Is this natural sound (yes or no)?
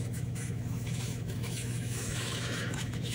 no